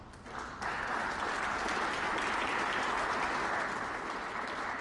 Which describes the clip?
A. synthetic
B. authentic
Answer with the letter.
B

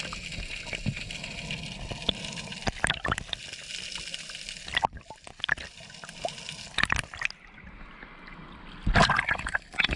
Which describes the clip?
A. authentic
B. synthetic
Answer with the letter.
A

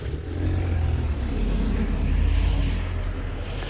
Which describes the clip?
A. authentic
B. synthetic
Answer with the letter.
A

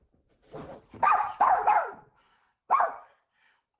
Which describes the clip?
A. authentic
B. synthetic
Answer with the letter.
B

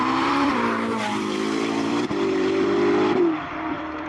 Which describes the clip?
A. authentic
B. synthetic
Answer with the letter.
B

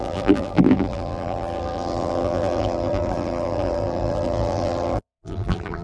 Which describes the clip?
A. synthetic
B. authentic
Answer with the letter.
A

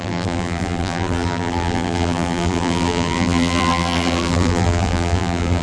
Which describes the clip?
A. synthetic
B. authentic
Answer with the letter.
A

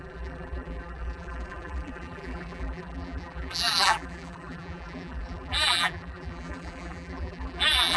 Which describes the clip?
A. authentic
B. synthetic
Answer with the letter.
B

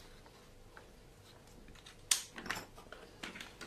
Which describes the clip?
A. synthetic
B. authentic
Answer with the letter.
B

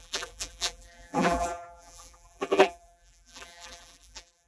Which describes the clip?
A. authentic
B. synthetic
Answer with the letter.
B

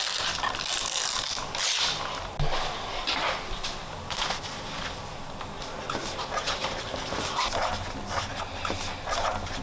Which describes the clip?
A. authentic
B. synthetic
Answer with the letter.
A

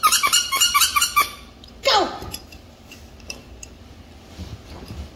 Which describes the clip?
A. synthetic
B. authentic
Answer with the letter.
A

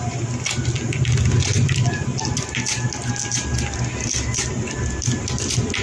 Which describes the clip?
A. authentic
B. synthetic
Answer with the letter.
A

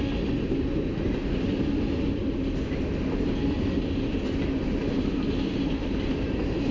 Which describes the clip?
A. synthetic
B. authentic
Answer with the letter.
B